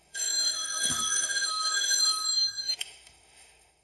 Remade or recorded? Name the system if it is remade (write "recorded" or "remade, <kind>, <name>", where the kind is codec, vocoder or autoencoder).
remade, autoencoder, DAC-VAE